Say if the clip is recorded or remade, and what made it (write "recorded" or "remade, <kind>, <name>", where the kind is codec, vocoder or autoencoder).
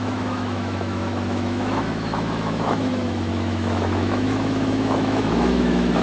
remade, autoencoder, DAC-VAE